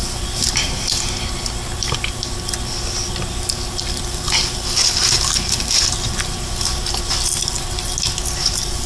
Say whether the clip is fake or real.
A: real